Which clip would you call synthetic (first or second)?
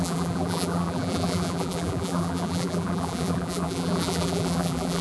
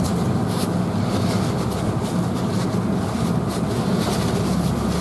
first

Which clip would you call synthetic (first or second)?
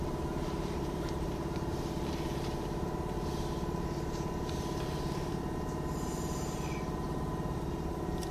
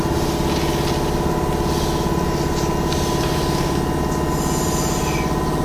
first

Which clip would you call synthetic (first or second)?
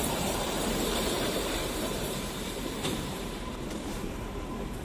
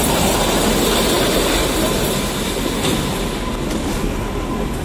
first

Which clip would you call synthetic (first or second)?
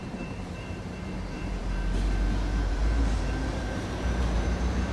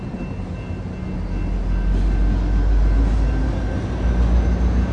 first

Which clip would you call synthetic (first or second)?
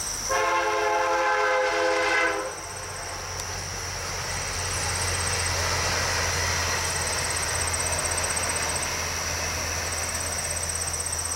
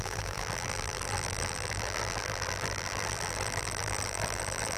second